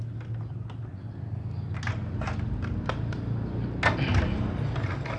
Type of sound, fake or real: real